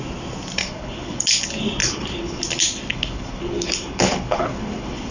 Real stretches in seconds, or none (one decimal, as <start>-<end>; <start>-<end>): 0.0-0.6; 1.4-1.8; 2.4-2.9